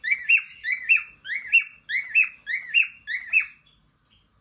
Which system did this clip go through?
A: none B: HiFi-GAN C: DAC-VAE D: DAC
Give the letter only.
A